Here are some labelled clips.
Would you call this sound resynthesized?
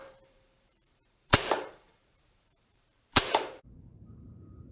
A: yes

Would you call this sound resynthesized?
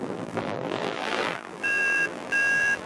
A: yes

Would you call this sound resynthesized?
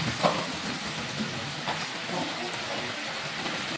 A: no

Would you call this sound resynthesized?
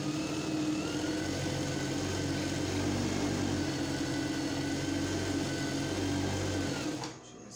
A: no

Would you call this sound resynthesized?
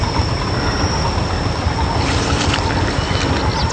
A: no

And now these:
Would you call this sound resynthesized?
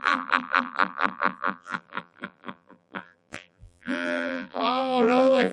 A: yes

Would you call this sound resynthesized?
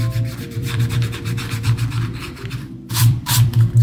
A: yes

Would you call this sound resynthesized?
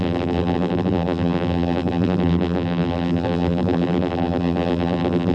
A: yes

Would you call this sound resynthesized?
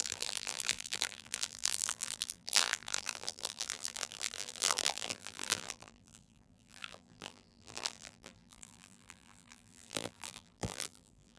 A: yes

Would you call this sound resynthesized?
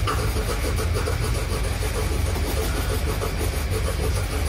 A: no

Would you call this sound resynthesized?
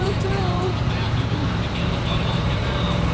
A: yes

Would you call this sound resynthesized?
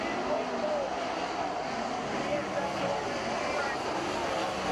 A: no